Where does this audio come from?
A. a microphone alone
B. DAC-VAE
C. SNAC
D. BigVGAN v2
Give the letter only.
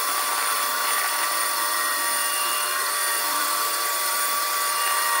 D